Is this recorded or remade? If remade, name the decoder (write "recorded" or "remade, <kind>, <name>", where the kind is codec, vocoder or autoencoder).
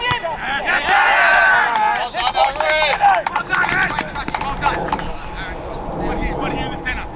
recorded